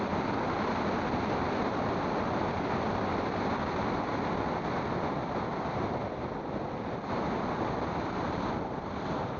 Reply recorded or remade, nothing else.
recorded